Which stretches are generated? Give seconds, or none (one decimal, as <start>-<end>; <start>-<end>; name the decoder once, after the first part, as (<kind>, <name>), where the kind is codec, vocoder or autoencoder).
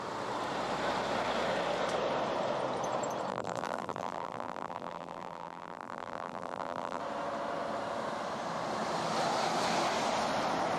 3.3-7.0 (vocoder, BigVGAN v2)